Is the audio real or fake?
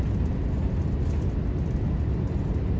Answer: real